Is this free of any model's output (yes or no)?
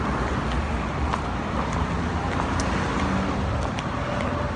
yes